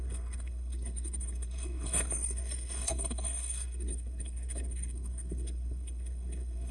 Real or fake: fake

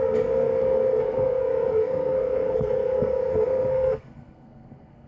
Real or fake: fake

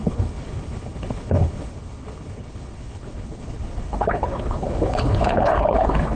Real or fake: fake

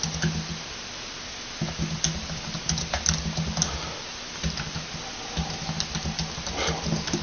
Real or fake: real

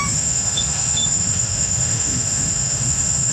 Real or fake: fake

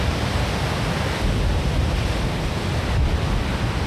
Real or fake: real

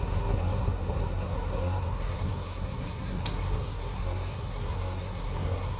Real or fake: fake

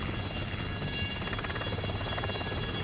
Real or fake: real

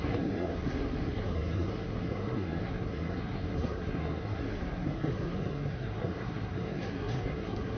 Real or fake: fake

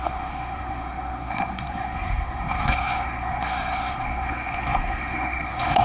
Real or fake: fake